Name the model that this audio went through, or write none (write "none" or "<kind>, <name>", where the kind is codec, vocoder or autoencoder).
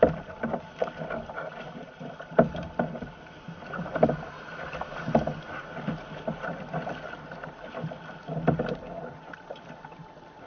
none